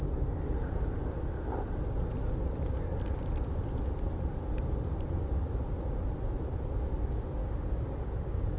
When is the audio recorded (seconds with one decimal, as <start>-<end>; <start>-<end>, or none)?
0.0-7.4